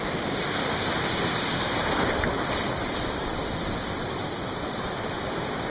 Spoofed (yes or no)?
yes